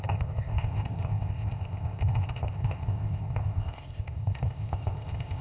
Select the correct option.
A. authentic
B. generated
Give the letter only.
B